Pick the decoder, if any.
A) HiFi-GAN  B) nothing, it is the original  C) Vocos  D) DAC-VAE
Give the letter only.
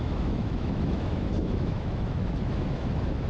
D